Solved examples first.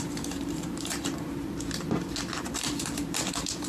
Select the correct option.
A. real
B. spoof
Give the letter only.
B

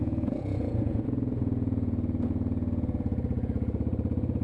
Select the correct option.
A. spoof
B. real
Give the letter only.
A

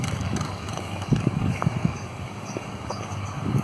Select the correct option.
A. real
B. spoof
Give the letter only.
B